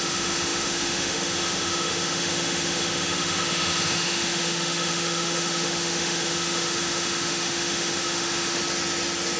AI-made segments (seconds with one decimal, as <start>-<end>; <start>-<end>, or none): 0.0-8.6